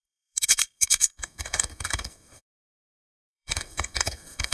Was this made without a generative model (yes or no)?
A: no